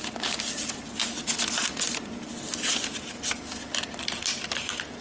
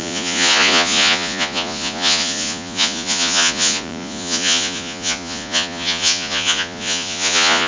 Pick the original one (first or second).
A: first